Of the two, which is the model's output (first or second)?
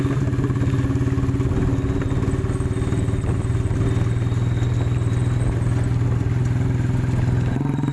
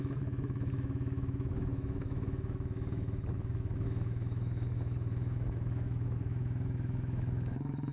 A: second